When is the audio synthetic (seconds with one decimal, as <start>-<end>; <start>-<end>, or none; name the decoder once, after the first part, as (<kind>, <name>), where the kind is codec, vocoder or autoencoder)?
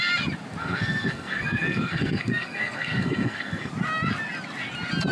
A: 0.6-3.7 (codec, SNAC)